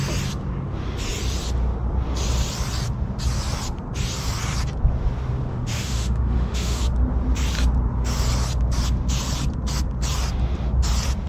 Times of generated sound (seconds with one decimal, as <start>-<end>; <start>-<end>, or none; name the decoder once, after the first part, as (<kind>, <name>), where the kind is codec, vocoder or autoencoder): 5.5-6.8 (autoencoder, DAC-VAE)